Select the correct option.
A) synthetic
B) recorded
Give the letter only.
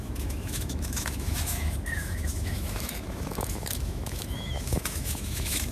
A